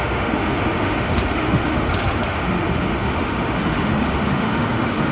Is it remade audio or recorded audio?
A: remade